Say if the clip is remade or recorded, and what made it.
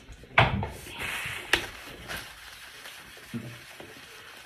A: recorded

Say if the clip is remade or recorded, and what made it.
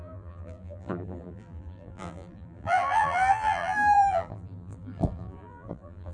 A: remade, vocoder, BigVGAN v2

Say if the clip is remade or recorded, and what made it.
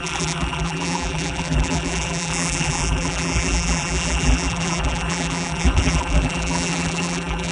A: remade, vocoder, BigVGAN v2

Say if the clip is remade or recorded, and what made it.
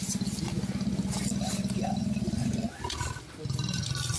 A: recorded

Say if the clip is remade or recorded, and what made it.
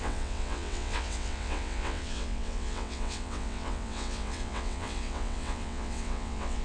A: remade, vocoder, WaveNeXt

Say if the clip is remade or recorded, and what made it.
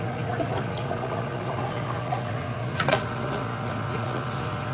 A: remade, vocoder, Vocos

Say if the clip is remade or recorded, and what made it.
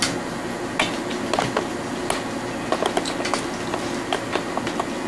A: recorded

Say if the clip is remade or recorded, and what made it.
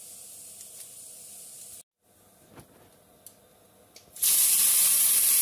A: recorded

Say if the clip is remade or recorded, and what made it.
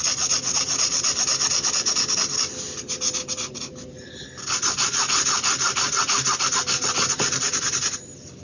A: recorded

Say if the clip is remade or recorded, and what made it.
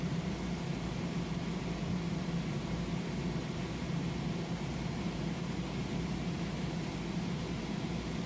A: remade, vocoder, BigVGAN v2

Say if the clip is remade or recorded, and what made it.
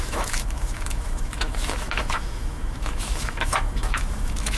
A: remade, autoencoder, DAC-VAE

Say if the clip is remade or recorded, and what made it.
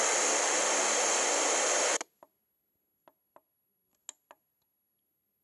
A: recorded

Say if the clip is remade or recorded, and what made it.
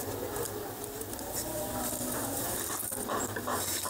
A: recorded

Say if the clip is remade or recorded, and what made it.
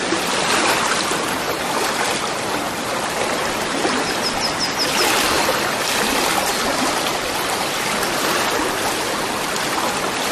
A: recorded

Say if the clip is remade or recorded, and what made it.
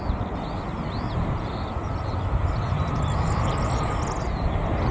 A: recorded